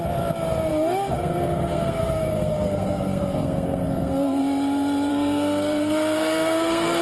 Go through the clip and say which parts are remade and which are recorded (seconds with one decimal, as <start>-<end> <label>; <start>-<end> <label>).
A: 0.0-0.7 recorded; 0.7-4.4 remade; 4.4-5.1 recorded; 5.1-7.0 remade